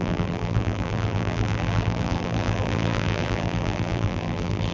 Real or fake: fake